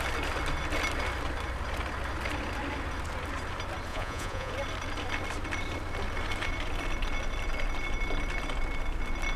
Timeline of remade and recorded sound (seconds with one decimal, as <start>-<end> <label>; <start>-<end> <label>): 0.0-3.9 recorded; 3.9-4.5 remade; 4.5-9.4 recorded